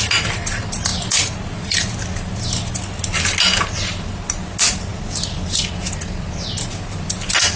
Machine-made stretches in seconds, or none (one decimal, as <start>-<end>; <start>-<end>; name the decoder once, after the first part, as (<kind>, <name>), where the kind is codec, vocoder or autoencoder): none